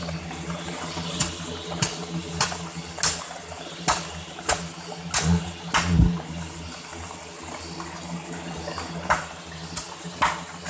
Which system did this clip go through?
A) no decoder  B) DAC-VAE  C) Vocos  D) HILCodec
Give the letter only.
A